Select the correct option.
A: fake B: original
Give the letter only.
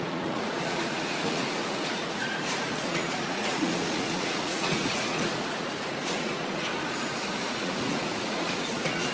A